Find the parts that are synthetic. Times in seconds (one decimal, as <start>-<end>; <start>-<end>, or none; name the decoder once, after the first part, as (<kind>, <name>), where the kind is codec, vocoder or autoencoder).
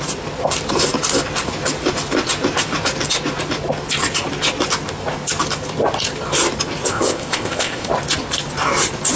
6.9-7.9 (codec, ZipCodec)